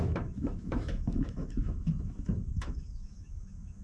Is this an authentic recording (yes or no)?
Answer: no